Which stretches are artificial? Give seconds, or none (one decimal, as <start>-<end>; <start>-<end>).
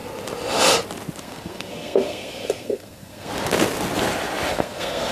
1.2-3.3; 4.5-5.1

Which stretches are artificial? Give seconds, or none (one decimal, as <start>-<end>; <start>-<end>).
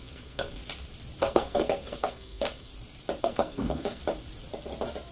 0.0-0.6; 1.2-2.7; 3.2-4.0